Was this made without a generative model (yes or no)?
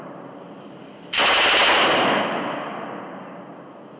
yes